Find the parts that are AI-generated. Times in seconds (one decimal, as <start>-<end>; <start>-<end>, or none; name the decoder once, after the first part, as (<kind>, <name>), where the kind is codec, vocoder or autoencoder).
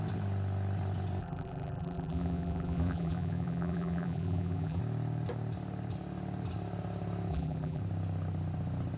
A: 1.2-4.8 (vocoder, BigVGAN v2); 7.3-7.8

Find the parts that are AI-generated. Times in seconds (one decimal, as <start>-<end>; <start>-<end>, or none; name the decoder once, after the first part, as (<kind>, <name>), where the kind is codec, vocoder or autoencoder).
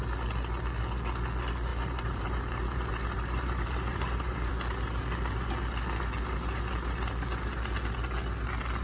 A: 1.7-4.5 (vocoder, BigVGAN v2)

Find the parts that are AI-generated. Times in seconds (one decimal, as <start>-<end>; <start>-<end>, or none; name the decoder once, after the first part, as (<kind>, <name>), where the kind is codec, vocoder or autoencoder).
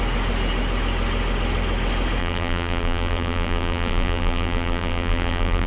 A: 2.2-5.7 (vocoder, BigVGAN v2)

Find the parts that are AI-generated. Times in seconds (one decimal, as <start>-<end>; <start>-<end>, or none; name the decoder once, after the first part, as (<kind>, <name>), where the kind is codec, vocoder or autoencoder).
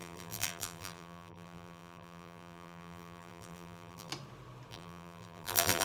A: 0.0-4.1 (vocoder, BigVGAN v2); 4.7-5.8